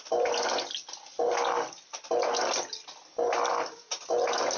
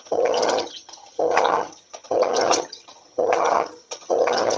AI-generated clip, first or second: second